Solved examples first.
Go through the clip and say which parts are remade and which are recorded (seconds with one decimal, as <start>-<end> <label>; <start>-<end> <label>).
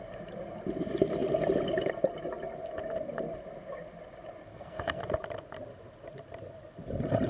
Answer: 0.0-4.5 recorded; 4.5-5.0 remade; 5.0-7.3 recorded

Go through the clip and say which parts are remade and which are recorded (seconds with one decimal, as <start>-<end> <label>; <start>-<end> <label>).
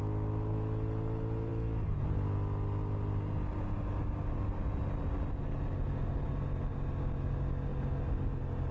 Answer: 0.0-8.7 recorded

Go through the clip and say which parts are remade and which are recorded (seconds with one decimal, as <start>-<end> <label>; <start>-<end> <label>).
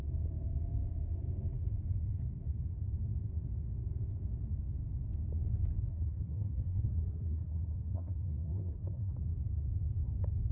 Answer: 0.0-5.9 recorded; 5.9-9.1 remade; 9.1-10.5 recorded